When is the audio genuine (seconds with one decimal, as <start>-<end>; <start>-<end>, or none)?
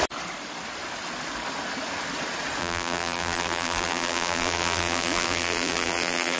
0.0-2.6